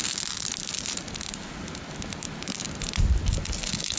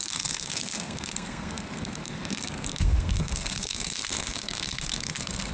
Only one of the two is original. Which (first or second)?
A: first